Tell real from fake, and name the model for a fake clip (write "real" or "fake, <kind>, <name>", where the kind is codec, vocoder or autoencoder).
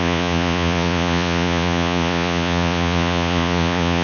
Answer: fake, vocoder, Vocos